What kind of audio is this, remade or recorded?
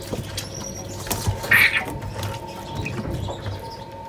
recorded